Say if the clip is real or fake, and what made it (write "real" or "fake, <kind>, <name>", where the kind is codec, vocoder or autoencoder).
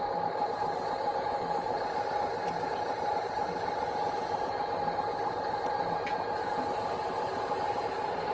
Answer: real